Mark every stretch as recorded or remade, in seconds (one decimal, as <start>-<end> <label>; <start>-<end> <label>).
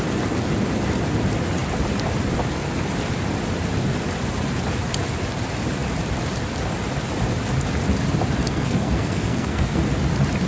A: 0.0-8.4 recorded; 8.4-9.8 remade; 9.8-10.5 recorded